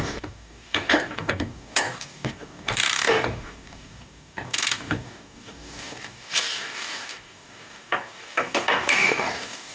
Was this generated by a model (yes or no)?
yes